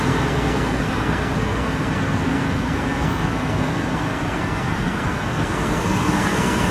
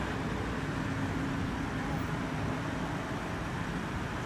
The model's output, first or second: first